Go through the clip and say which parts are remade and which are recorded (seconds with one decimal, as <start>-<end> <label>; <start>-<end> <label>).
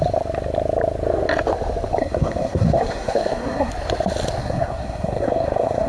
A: 0.0-2.0 recorded; 2.0-3.7 remade; 3.7-4.4 recorded; 4.4-5.9 remade